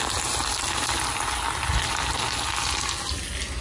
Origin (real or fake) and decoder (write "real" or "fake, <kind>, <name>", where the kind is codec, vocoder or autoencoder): real